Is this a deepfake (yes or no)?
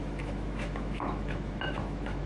yes